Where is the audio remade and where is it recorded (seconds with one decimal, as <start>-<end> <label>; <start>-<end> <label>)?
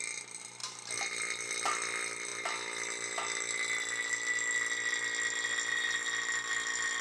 0.0-2.3 remade; 2.3-6.5 recorded; 6.5-7.0 remade